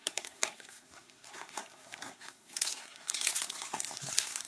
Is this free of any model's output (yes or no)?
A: no